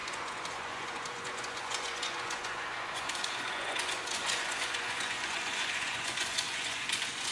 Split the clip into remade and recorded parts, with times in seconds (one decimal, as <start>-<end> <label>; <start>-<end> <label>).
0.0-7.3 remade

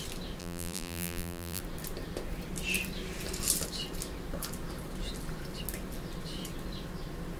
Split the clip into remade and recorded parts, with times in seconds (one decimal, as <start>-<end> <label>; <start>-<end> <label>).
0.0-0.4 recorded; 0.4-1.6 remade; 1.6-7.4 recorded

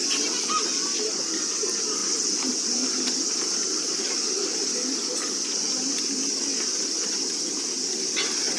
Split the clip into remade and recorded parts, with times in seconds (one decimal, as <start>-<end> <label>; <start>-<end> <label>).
0.0-8.6 recorded